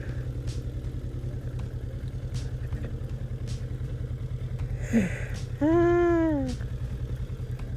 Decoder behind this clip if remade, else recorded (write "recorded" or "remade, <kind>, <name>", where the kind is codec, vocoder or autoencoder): recorded